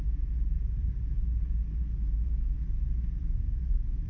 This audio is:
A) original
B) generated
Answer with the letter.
B